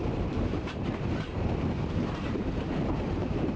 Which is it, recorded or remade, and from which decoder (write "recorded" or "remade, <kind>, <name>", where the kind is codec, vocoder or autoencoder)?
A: remade, vocoder, BigVGAN v2